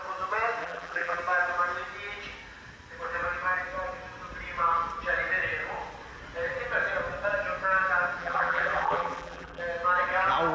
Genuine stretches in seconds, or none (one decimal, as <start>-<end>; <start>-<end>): 0.0-0.6; 1.2-8.2; 9.6-10.5